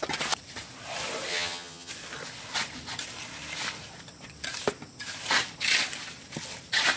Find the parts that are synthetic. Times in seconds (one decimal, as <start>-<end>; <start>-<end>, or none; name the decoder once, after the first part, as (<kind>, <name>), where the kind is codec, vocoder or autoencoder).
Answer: 1.3-1.9 (vocoder, HiFi-GAN)